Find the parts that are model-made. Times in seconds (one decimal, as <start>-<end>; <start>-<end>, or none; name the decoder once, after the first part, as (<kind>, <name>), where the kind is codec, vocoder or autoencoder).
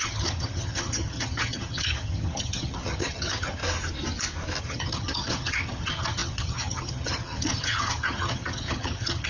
0.0-3.6 (vocoder, HiFi-GAN); 4.6-9.3